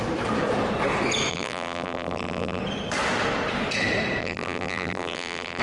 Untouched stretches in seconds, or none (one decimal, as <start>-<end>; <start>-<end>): 0.0-1.3; 2.6-4.2